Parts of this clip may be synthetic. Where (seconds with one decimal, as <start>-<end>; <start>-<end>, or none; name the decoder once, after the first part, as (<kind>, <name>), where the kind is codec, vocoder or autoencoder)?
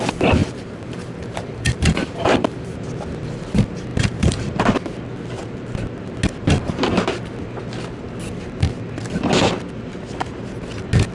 0.4-2.8 (vocoder, BigVGAN v2); 3.9-4.6